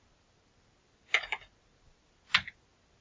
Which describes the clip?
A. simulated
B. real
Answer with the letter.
B